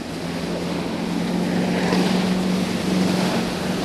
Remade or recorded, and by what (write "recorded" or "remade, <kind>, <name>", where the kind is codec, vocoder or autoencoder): recorded